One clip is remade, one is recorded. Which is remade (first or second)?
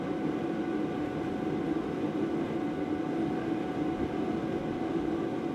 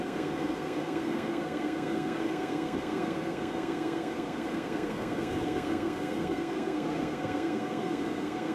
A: second